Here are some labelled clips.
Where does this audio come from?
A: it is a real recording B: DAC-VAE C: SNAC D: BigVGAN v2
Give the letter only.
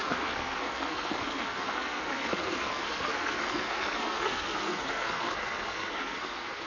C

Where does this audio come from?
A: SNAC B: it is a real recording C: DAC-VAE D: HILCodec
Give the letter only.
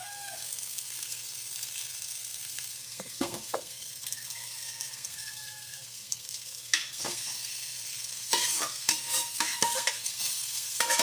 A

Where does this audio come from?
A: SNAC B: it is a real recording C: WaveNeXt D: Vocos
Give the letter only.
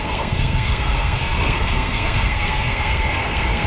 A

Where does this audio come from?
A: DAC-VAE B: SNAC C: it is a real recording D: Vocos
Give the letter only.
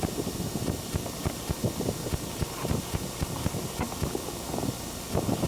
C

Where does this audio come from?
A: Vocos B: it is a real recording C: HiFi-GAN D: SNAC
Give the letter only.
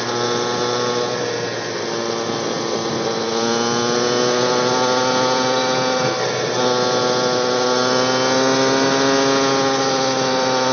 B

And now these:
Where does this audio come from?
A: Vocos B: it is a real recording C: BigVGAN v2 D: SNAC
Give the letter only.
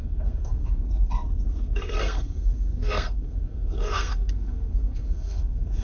D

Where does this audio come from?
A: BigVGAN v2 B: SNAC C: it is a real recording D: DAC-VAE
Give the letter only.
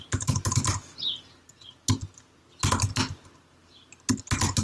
C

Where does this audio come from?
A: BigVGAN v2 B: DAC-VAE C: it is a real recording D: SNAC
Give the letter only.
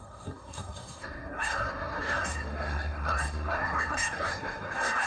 D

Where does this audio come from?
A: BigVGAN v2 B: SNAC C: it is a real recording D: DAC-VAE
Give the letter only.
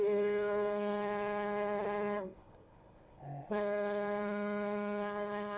B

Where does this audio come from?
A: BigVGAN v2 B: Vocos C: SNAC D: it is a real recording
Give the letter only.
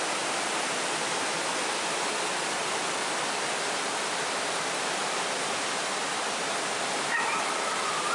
D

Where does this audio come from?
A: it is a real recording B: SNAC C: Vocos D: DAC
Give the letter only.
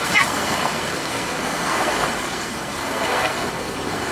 B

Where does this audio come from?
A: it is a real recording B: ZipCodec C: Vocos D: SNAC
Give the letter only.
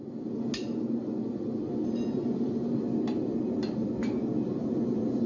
A